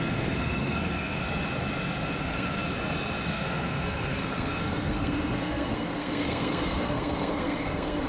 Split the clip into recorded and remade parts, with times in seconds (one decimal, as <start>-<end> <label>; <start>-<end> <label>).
0.0-1.2 remade; 1.2-2.2 recorded; 2.2-2.6 remade; 2.6-3.3 recorded; 3.3-8.1 remade

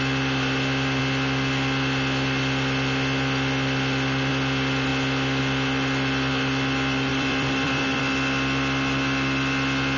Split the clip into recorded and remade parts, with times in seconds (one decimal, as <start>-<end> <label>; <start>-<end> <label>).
0.0-7.1 recorded; 7.1-8.0 remade; 8.0-10.0 recorded

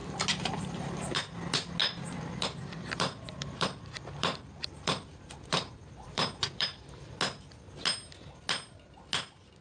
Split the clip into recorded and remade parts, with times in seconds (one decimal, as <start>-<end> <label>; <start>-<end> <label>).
0.0-1.1 remade; 1.1-1.8 recorded; 1.8-7.0 remade; 7.0-9.6 recorded